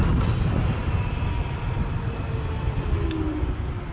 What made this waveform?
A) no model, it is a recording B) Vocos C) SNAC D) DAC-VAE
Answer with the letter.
A